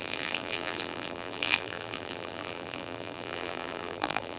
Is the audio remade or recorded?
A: remade